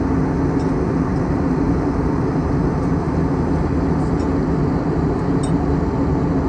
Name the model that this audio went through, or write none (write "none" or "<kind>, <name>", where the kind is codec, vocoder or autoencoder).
none